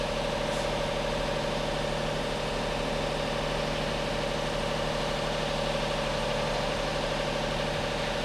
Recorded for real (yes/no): yes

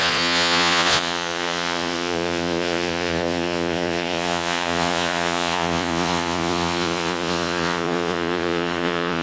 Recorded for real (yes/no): no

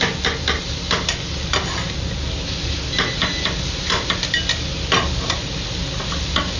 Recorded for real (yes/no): yes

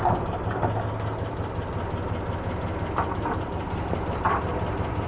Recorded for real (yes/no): yes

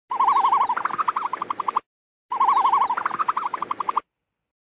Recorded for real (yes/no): yes